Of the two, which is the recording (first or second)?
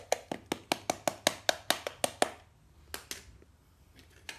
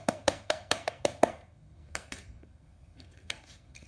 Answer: first